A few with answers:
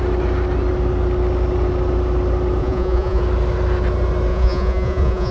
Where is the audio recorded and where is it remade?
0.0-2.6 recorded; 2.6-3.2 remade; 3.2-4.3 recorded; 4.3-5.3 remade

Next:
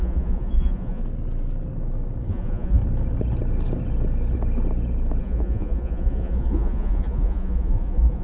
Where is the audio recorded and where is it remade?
0.0-1.0 remade; 1.0-2.3 recorded; 2.3-2.8 remade; 2.8-5.2 recorded; 5.2-8.2 remade

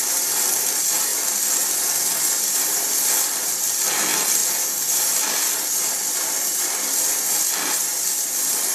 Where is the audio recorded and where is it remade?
0.0-8.7 recorded

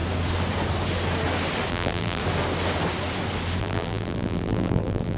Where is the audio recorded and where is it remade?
0.0-1.7 recorded; 1.7-2.2 remade; 2.2-3.6 recorded; 3.6-5.2 remade